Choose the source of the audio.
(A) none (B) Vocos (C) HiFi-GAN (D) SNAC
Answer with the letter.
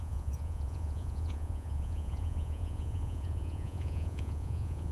B